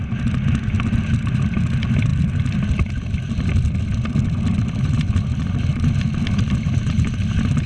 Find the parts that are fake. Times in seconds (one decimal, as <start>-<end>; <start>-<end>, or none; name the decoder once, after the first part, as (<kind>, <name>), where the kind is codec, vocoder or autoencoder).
none